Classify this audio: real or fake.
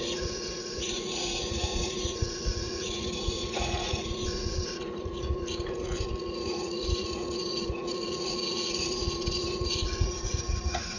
fake